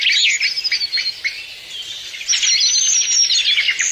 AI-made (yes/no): no